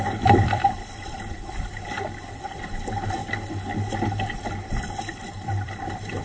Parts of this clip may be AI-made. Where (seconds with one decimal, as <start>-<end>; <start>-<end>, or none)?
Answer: 0.0-3.2; 5.0-6.2